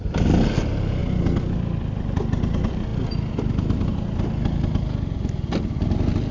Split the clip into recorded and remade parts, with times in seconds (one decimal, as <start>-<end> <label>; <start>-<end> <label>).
0.0-6.3 recorded